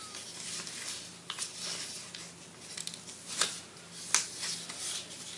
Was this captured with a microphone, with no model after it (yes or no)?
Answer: yes